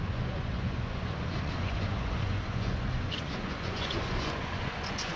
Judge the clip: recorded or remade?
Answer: remade